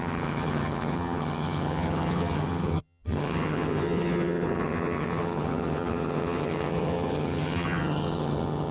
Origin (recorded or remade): remade